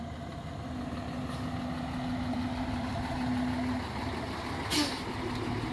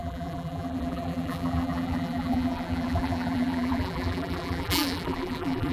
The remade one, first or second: second